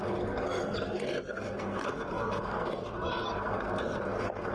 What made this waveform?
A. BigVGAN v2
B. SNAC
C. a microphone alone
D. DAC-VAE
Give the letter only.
B